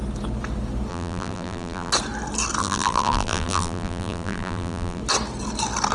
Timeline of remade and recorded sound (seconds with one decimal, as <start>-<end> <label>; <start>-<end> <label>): 0.0-0.9 recorded; 0.9-1.9 remade; 1.9-2.6 recorded; 2.6-5.0 remade; 5.0-5.9 recorded